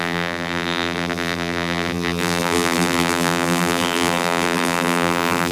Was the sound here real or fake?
fake